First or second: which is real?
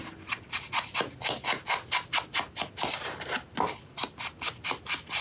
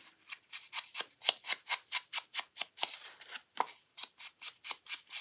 first